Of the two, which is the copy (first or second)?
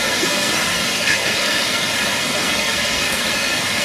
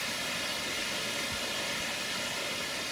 first